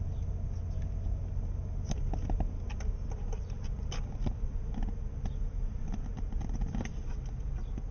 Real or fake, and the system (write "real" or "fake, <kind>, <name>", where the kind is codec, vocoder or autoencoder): real